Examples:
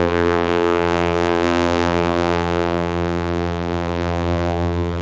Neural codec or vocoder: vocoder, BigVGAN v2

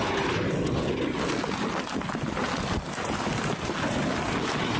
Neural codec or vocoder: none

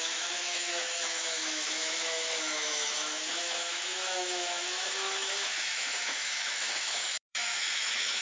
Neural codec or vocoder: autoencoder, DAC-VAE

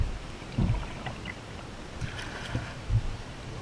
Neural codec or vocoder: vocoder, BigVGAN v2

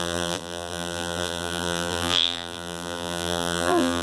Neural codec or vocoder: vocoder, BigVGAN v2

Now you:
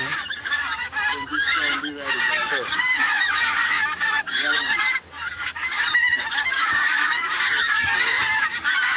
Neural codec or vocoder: codec, DAC